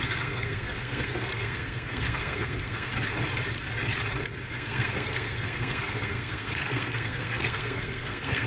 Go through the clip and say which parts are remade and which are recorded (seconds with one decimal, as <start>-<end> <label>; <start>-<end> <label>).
0.0-2.9 remade; 2.9-4.5 recorded; 4.5-8.5 remade